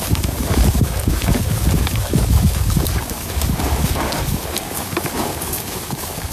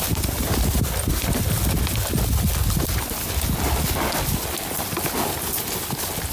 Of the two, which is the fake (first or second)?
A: first